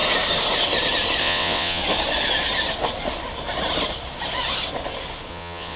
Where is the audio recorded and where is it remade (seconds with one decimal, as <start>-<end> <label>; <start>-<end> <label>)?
0.0-1.2 recorded; 1.2-1.8 remade; 1.8-5.3 recorded; 5.3-5.8 remade

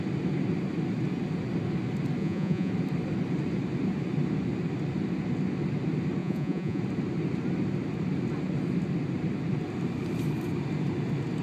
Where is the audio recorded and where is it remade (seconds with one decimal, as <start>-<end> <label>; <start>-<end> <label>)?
0.0-2.2 recorded; 2.2-2.7 remade; 2.7-6.2 recorded; 6.2-6.8 remade; 6.8-11.4 recorded

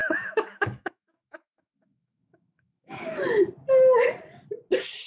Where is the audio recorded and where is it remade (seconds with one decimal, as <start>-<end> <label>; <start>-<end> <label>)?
0.0-3.1 remade; 3.1-5.1 recorded

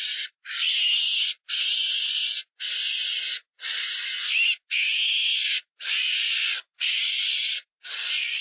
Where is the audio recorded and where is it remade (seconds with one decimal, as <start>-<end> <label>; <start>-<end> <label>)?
0.0-8.4 recorded